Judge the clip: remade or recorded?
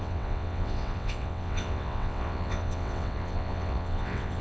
remade